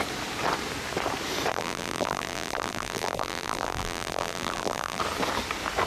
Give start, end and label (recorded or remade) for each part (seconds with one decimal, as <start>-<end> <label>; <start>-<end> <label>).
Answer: 0.0-1.5 recorded; 1.5-5.0 remade; 5.0-5.9 recorded